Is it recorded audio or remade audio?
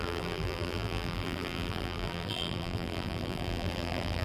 remade